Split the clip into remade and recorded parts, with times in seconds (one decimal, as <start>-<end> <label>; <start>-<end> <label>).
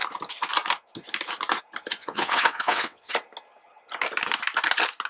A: 0.0-2.0 recorded; 2.0-3.1 remade; 3.1-5.1 recorded